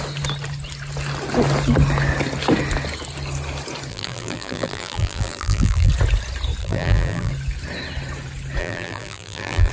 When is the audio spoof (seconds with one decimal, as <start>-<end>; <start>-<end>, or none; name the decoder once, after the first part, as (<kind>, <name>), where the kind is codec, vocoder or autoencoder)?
3.9-5.9 (vocoder, BigVGAN v2); 6.6-7.3; 8.6-9.7